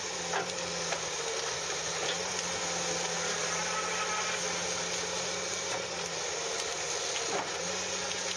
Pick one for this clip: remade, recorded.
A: recorded